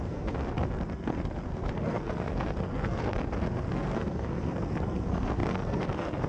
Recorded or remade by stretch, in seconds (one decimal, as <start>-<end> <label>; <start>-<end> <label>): 0.0-6.3 remade